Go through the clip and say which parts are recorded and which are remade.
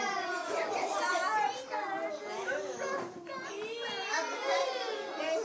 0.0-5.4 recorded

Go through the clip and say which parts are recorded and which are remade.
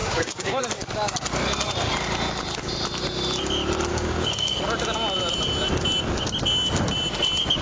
0.0-0.6 remade; 0.6-3.9 recorded; 3.9-4.6 remade; 4.6-7.6 recorded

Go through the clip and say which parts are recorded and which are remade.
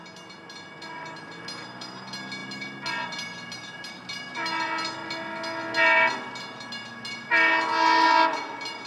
0.0-8.9 recorded